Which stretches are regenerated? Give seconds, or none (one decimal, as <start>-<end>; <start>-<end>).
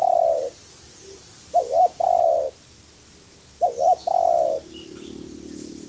none